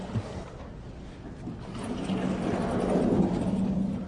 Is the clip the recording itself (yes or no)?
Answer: yes